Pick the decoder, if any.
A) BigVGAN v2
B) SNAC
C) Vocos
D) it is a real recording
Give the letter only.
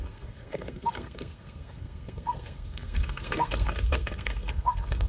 B